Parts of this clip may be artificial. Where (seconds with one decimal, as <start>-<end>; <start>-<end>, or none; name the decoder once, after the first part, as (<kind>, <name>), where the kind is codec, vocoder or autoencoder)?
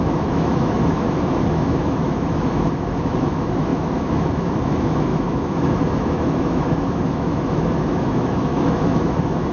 0.0-9.5 (autoencoder, DAC-VAE)